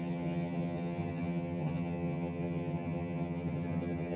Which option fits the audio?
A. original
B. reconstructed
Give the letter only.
B